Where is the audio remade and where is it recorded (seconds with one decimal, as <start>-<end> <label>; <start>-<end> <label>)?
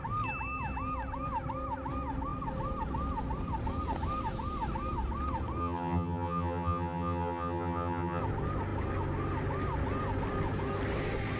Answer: 0.0-5.6 recorded; 5.6-8.2 remade; 8.2-11.4 recorded